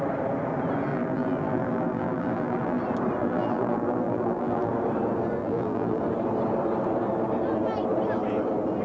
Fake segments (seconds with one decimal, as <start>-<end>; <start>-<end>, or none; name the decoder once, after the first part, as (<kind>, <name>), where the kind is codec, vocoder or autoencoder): 0.9-2.8 (vocoder, BigVGAN v2); 3.2-4.7; 5.4-6.0